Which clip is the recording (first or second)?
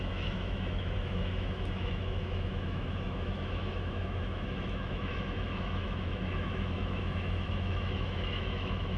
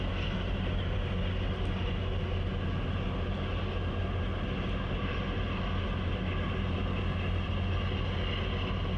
second